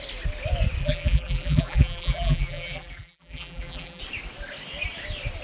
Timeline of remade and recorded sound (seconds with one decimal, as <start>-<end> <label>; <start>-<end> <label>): 0.0-0.8 recorded; 0.8-4.0 remade; 4.0-5.4 recorded